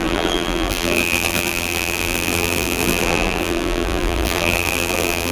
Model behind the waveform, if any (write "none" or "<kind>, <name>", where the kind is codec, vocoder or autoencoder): vocoder, BigVGAN v2